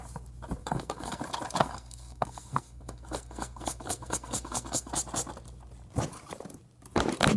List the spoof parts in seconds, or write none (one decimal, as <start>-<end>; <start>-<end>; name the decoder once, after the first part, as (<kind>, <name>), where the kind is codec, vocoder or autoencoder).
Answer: 0.6-1.2 (codec, SNAC); 1.6-4.9